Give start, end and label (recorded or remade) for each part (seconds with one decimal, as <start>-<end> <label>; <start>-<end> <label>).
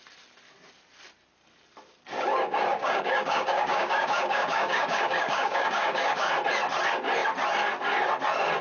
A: 0.0-2.7 recorded; 2.7-6.3 remade; 6.3-8.6 recorded